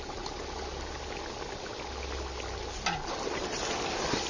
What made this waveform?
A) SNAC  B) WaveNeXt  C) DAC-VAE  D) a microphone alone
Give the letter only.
D